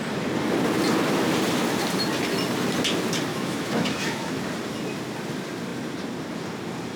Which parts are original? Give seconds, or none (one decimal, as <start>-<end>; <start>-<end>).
0.0-3.3; 4.3-7.0